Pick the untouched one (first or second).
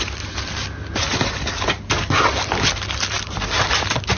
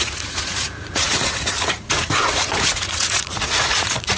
first